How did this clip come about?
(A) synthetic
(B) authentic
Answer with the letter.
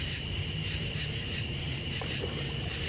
A